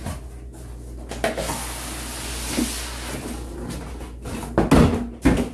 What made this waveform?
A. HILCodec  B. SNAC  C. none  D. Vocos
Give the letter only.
C